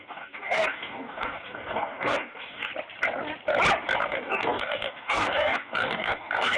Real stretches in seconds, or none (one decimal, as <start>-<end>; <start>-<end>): 2.7-4.0